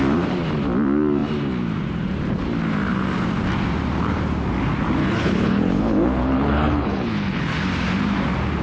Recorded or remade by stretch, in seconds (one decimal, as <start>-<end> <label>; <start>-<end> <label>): 0.0-5.0 recorded; 5.0-7.6 remade; 7.6-8.6 recorded